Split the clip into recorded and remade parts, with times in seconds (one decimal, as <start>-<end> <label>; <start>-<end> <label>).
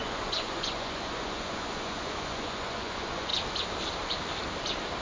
0.0-3.3 remade; 3.3-5.0 recorded